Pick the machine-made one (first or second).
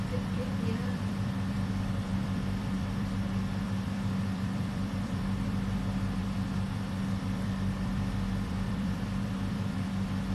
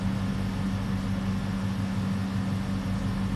first